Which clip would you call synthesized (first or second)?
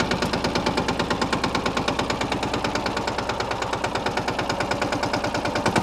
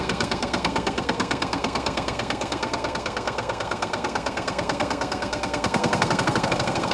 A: second